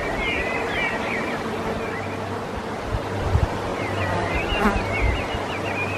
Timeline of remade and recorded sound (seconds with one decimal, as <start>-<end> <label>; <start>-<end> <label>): 0.0-3.7 recorded; 3.7-4.6 remade; 4.6-6.0 recorded